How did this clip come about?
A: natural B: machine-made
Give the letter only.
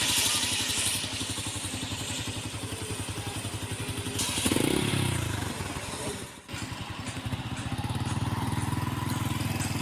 A